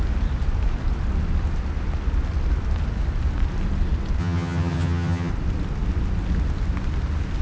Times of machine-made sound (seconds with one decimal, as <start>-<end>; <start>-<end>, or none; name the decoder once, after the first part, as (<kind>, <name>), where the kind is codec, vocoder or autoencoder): 4.2-5.3 (vocoder, HiFi-GAN)